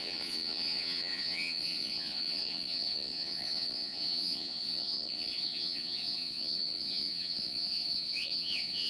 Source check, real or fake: fake